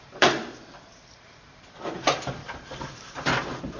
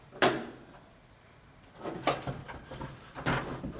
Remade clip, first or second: first